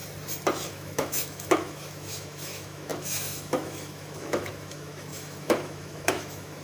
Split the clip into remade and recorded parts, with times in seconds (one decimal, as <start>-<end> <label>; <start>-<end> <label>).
0.0-0.7 recorded; 0.7-6.6 remade